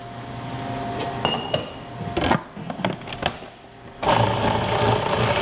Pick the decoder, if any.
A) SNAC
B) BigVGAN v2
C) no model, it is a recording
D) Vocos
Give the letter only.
C